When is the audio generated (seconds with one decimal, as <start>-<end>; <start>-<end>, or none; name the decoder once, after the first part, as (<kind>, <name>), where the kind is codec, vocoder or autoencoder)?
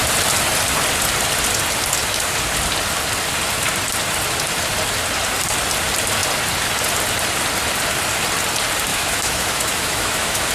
8.9-10.5 (autoencoder, DAC-VAE)